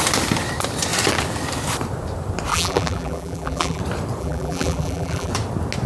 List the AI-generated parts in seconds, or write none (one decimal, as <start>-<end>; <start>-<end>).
2.5-3.8; 4.2-5.3